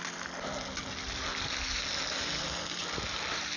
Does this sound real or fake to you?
real